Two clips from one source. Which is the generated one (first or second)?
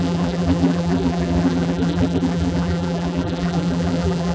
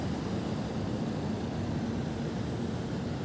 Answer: first